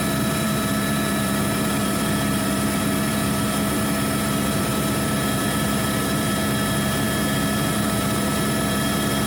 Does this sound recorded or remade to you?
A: remade